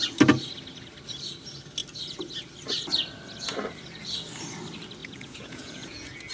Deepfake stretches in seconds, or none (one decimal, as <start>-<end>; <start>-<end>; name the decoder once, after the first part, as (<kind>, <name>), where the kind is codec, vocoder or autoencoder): 5.0-6.3 (vocoder, Vocos)